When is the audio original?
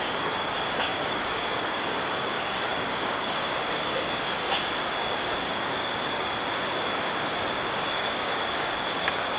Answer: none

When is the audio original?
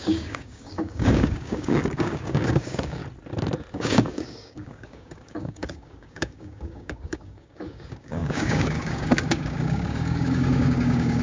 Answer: 3.0-3.7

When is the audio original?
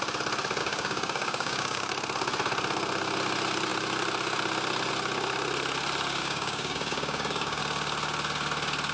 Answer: 0.0-0.6; 1.9-6.2; 7.6-8.9